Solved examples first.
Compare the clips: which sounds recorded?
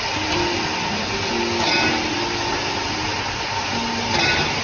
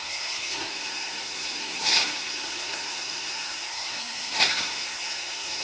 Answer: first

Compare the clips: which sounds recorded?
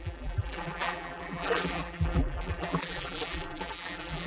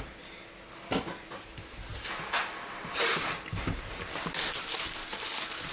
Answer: second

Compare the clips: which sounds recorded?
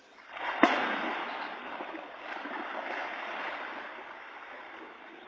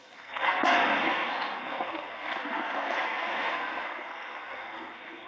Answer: first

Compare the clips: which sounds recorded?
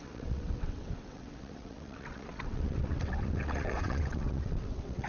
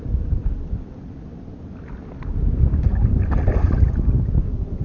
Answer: second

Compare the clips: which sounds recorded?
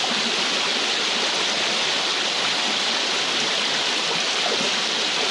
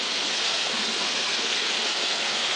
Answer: first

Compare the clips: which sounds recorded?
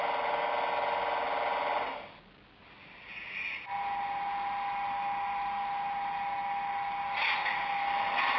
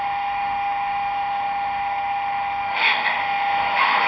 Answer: first